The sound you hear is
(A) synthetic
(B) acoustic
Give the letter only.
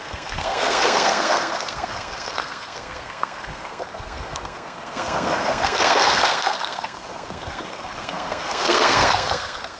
A